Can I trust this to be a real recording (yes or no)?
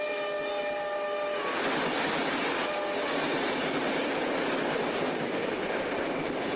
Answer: yes